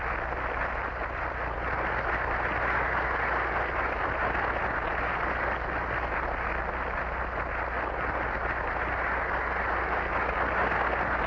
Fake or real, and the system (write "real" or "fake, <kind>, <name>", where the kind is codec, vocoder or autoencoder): real